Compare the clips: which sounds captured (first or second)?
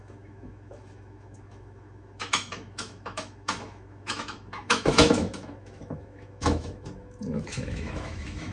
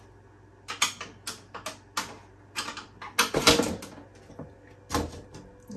second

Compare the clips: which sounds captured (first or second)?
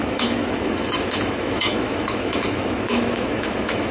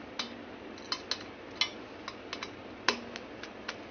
second